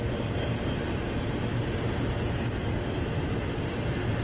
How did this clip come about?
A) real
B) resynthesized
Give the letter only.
A